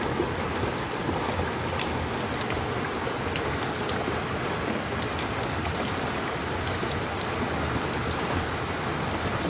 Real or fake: real